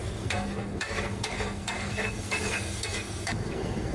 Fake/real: fake